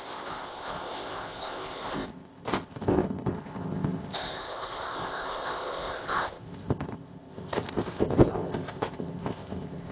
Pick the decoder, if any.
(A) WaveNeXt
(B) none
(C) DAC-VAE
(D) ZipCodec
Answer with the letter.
D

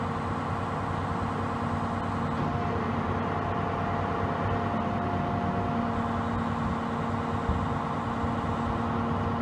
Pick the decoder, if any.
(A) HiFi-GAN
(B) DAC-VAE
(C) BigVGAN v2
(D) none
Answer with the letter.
D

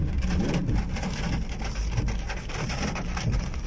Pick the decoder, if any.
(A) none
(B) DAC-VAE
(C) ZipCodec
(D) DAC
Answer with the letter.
A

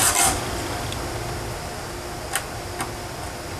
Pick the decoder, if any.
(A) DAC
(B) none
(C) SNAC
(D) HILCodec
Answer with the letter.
B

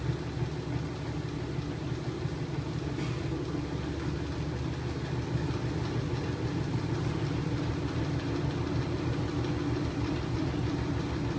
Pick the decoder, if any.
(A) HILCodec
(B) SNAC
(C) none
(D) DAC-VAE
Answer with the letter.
C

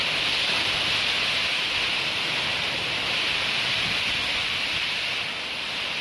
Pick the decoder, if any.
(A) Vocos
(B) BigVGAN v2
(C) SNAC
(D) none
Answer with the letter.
D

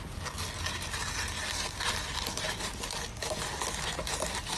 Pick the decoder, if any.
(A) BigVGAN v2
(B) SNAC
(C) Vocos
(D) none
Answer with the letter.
D